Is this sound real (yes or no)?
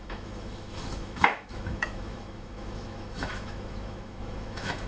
no